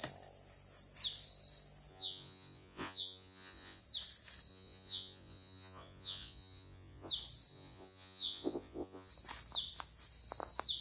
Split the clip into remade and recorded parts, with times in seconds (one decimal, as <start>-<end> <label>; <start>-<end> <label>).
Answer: 0.0-1.9 recorded; 1.9-3.8 remade; 3.8-4.5 recorded; 4.5-7.1 remade; 7.1-7.5 recorded; 7.5-9.1 remade; 9.1-10.8 recorded